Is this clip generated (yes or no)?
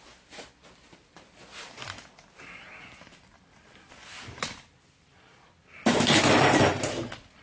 no